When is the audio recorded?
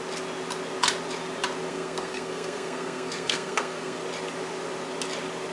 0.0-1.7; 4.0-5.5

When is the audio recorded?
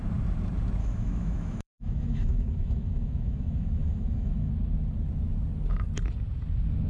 0.0-0.8; 4.5-6.9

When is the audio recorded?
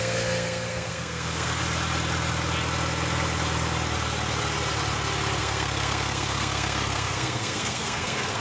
1.6-5.4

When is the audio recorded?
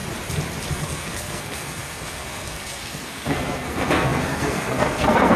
0.0-0.7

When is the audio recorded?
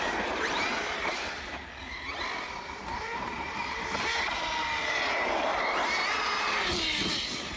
0.0-5.5; 6.5-7.6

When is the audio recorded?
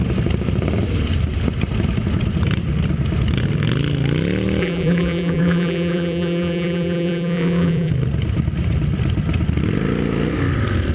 0.0-4.6; 7.9-10.9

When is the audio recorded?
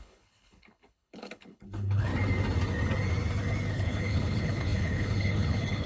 2.1-3.7